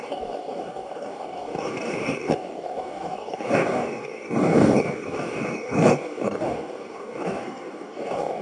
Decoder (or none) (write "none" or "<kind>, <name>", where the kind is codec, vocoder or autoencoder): codec, DAC